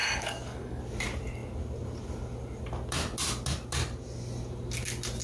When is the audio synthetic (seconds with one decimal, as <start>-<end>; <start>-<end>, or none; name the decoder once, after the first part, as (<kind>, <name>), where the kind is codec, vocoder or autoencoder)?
0.0-0.8 (codec, DAC)